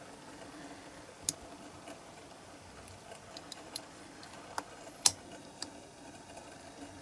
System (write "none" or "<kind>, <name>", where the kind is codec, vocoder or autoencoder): none